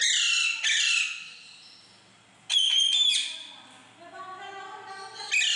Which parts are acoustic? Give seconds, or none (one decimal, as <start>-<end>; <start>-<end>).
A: 0.0-5.6